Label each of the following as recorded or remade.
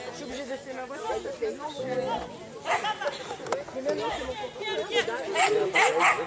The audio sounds recorded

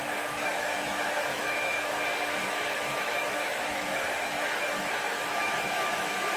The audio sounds remade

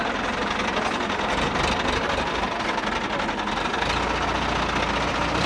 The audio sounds recorded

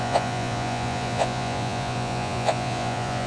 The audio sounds remade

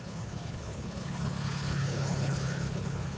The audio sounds remade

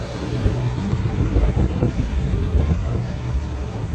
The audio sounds remade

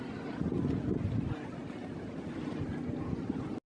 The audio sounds recorded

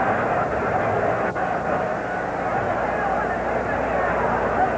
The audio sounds recorded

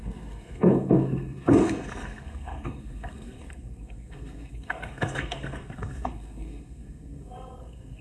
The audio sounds remade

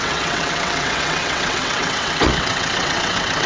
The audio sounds remade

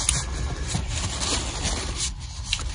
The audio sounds recorded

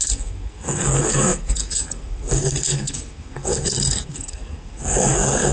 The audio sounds remade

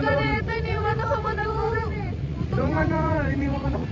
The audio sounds remade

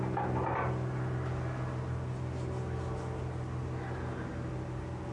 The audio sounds recorded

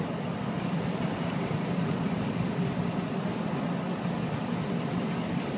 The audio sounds recorded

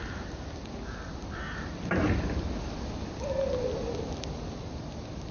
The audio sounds recorded